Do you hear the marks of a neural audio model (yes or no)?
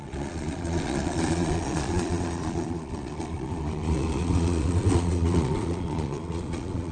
yes